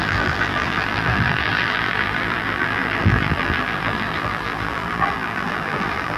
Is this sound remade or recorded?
remade